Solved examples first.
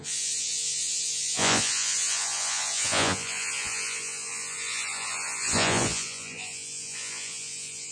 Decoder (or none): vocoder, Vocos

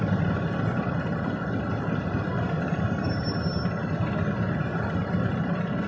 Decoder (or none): none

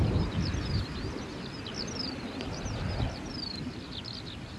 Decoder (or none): none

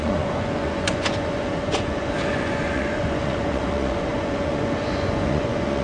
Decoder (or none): vocoder, Vocos